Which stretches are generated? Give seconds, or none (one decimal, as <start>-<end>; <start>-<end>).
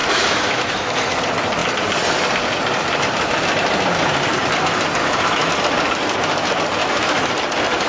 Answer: 0.0-1.2; 5.0-5.5; 6.8-7.3